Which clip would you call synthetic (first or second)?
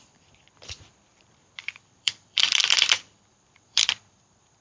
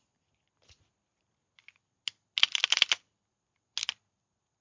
first